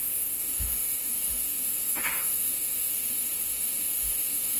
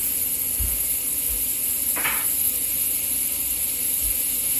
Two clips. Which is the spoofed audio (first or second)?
first